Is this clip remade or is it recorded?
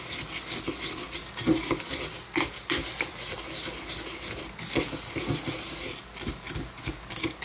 recorded